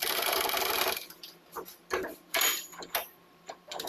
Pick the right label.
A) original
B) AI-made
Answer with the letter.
B